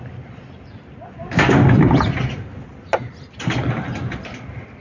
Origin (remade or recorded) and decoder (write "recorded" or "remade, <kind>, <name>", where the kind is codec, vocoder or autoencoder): recorded